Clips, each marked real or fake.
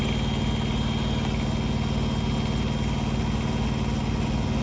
real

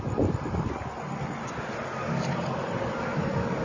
real